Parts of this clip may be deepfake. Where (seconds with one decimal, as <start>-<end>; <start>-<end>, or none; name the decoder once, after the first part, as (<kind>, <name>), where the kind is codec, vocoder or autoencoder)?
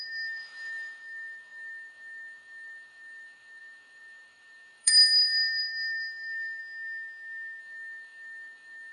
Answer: 0.0-6.6 (autoencoder, DAC-VAE); 7.6-8.9